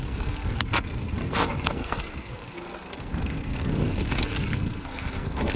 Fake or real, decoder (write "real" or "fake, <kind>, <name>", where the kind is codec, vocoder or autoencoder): fake, codec, SNAC